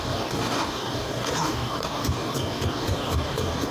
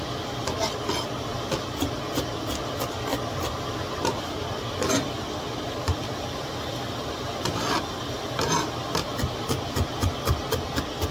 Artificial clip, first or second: first